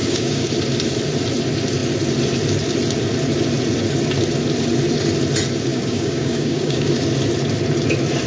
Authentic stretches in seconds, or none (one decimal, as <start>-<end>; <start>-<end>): 0.5-5.7; 6.9-8.3